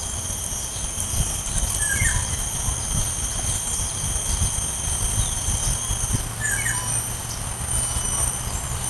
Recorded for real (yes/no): yes